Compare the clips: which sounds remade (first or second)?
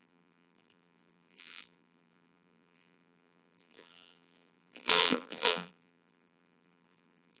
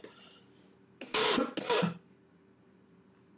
first